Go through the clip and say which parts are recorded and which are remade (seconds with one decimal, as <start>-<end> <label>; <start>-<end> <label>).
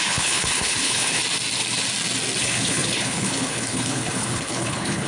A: 0.0-1.2 remade; 1.2-2.4 recorded; 2.4-5.1 remade